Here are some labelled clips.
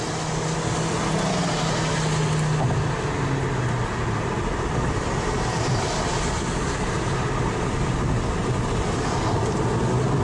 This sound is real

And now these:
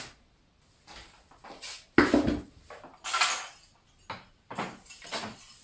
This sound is real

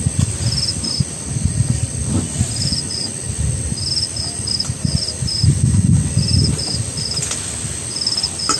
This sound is real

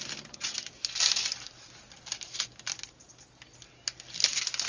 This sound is real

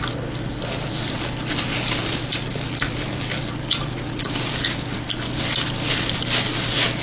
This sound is real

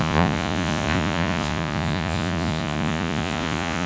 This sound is fake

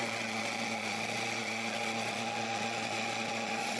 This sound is fake